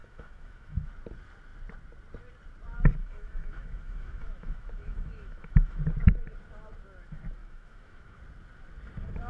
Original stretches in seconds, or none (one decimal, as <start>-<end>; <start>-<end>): 0.9-3.0; 5.8-7.4; 8.2-9.3